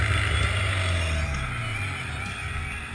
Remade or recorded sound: recorded